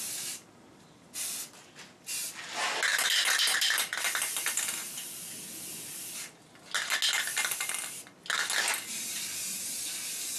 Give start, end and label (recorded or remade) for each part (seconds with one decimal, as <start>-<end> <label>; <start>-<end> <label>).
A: 0.0-2.9 recorded; 2.9-3.9 remade; 3.9-10.4 recorded